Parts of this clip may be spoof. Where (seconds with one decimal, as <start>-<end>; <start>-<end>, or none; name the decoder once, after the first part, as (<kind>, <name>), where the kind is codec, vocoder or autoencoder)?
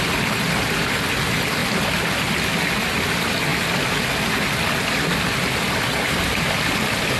none